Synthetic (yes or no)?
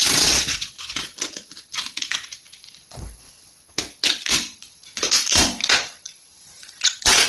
yes